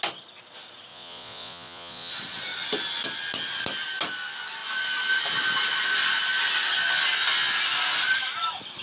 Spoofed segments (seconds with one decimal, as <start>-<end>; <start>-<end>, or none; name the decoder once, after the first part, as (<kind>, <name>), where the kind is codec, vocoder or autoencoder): 0.9-2.1 (vocoder, Vocos)